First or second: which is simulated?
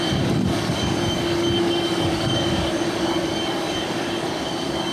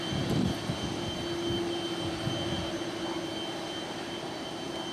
first